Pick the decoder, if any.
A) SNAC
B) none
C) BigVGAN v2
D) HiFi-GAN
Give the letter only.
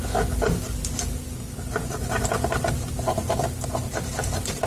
B